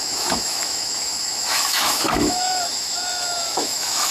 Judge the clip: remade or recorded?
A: remade